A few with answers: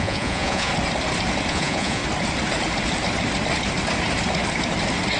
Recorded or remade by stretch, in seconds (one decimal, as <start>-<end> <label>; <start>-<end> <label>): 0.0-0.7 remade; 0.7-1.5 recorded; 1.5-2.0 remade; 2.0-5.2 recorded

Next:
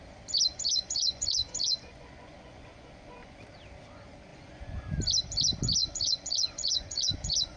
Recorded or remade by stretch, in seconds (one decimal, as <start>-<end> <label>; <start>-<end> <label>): 0.0-0.5 recorded; 0.5-3.4 remade; 3.4-4.3 recorded; 4.3-4.8 remade; 4.8-5.8 recorded; 5.8-7.6 remade

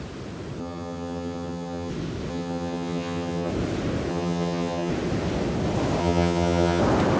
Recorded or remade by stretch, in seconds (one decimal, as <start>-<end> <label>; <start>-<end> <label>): 0.0-0.6 recorded; 0.6-1.9 remade; 1.9-2.3 recorded; 2.3-3.5 remade; 3.5-4.1 recorded; 4.1-4.9 remade; 4.9-6.0 recorded; 6.0-6.8 remade; 6.8-7.2 recorded

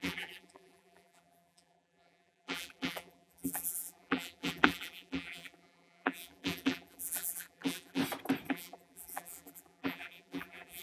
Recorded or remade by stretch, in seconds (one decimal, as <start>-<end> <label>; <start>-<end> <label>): 0.0-8.0 remade; 8.0-8.5 recorded; 8.5-10.8 remade

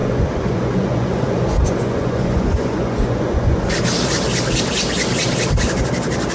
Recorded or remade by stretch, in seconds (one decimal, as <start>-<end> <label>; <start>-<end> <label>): 0.0-3.7 remade; 3.7-6.3 recorded

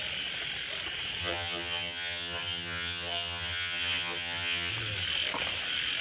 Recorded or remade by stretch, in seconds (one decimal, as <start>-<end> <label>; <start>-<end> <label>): 0.0-1.2 recorded; 1.2-4.7 remade; 4.7-6.0 recorded

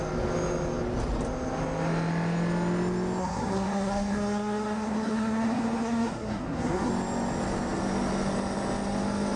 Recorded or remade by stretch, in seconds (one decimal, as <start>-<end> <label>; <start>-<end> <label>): 0.0-3.2 recorded; 3.2-6.9 remade; 6.9-9.4 recorded

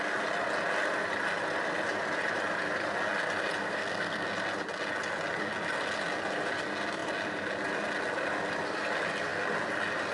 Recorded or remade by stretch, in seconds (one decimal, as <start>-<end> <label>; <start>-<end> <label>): 0.0-3.6 recorded; 3.6-4.3 remade; 4.3-10.1 recorded